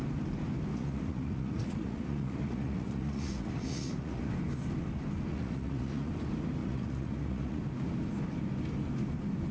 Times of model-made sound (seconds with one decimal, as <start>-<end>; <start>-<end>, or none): 0.7-4.3; 5.3-6.1; 6.6-7.6

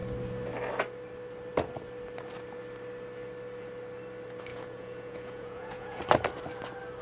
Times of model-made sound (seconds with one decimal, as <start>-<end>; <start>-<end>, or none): 4.5-6.0

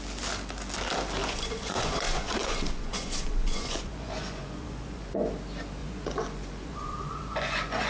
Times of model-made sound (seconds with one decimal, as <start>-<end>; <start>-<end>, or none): 1.2-5.3; 5.8-7.9

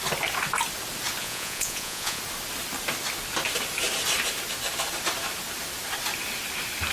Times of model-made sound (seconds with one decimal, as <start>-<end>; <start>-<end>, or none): 1.2-2.2